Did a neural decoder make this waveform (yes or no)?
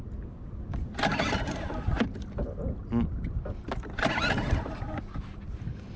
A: no